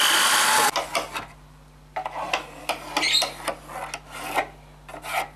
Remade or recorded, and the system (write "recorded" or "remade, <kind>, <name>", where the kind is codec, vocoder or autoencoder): recorded